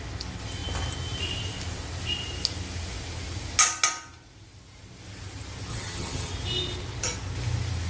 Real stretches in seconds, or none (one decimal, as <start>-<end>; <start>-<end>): 0.0-5.7; 6.3-7.9